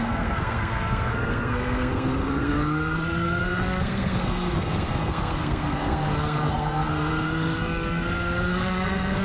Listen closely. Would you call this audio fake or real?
fake